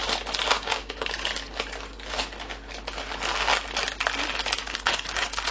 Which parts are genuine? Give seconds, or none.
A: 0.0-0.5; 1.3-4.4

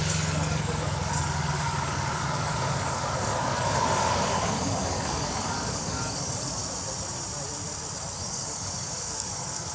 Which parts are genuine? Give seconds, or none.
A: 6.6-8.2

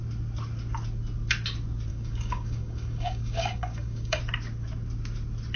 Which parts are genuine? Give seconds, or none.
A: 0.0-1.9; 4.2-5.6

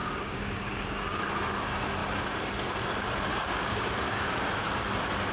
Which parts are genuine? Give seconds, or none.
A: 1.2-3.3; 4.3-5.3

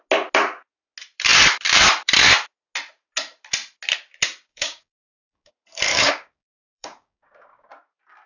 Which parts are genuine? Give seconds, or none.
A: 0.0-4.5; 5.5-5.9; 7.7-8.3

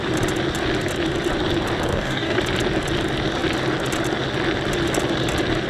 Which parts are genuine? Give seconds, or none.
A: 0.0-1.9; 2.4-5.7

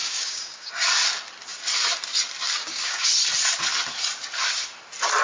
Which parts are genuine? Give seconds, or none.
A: 0.7-2.6; 3.1-5.2

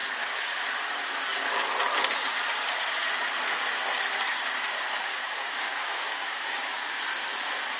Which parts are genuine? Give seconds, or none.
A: 0.0-5.1; 6.7-7.8